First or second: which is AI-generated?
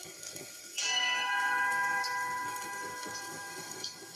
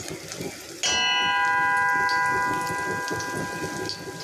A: first